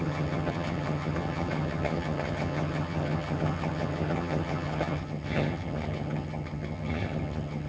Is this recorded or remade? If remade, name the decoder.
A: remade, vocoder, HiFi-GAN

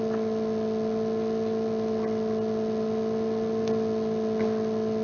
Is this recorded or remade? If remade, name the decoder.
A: recorded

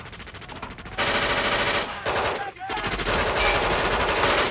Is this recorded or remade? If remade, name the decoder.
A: recorded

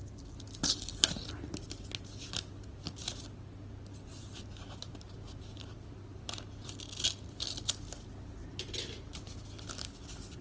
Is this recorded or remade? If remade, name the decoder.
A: recorded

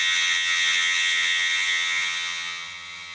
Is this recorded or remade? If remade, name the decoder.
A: remade, vocoder, HiFi-GAN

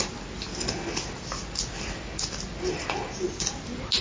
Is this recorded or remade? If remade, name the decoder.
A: recorded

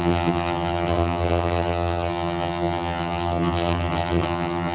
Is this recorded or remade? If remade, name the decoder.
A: remade, vocoder, HiFi-GAN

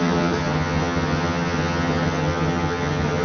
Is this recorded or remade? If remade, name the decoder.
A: remade, vocoder, HiFi-GAN